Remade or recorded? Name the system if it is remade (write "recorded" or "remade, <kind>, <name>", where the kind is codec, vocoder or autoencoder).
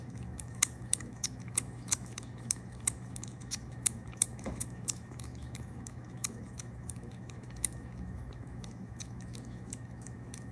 remade, autoencoder, DAC-VAE